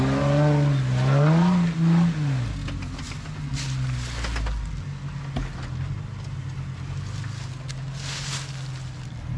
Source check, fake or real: real